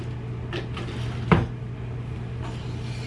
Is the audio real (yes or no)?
yes